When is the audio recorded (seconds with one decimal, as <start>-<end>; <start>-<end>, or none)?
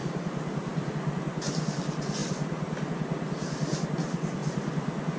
0.9-2.2; 2.9-4.4